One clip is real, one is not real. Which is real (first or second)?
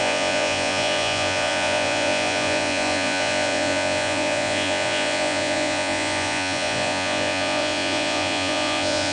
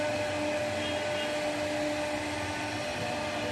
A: second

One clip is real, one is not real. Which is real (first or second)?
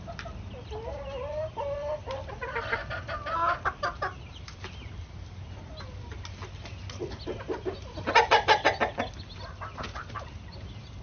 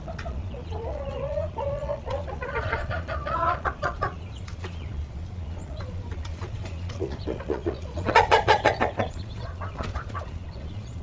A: first